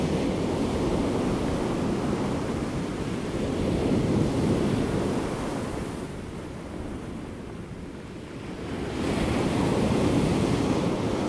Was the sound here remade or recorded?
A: recorded